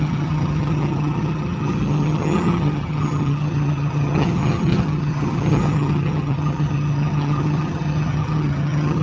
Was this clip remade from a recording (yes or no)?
yes